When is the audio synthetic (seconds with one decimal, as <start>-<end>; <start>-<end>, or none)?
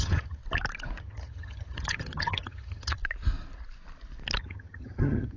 0.0-0.4; 1.0-3.0; 4.4-5.4